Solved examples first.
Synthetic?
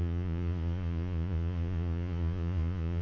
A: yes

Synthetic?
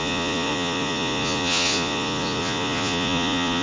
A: yes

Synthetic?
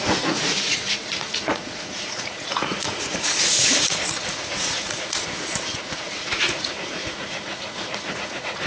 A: yes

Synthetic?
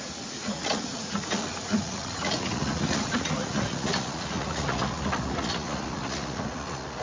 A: yes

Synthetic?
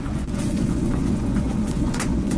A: yes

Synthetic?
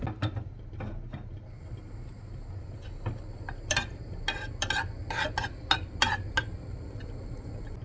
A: no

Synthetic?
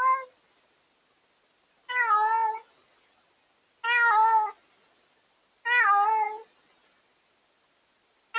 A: no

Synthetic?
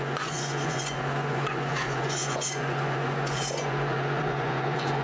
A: yes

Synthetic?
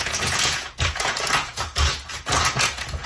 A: yes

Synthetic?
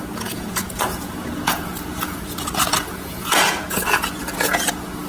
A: yes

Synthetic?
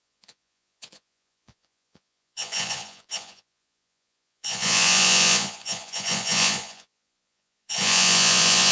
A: yes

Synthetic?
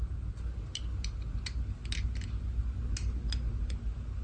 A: no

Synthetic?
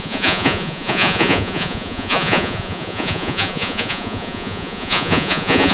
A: yes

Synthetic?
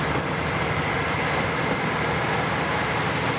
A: no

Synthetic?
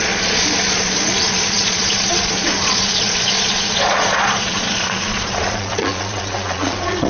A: yes